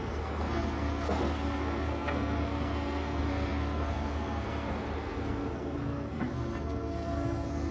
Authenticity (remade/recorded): remade